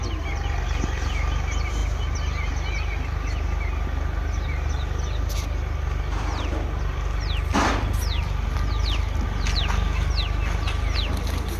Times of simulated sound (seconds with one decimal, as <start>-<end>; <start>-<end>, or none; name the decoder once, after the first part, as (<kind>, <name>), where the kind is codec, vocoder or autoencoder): none